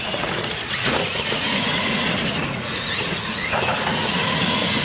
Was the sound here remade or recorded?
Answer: remade